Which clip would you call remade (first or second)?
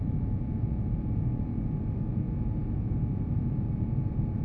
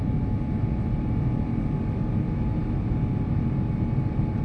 first